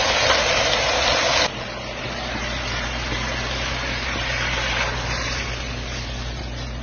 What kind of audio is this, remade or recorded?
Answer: recorded